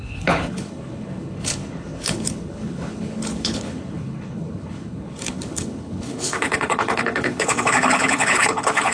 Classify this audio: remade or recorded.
remade